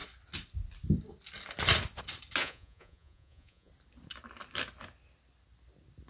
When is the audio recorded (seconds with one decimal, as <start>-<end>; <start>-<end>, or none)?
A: 0.0-2.4; 3.7-6.1